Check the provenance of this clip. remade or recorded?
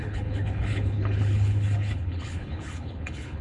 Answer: remade